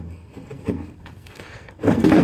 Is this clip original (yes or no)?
no